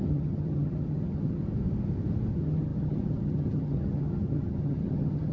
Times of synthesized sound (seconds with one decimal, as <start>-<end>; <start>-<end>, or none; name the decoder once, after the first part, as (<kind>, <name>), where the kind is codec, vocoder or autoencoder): 0.0-1.4 (vocoder, HiFi-GAN); 2.3-5.3